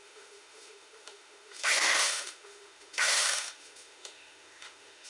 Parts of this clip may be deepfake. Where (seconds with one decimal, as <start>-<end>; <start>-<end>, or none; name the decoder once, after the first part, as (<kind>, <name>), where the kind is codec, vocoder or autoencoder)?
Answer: 0.0-5.1 (autoencoder, DAC-VAE)